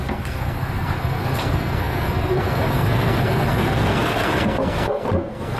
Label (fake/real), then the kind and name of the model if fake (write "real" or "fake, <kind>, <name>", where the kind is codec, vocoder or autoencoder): fake, codec, SNAC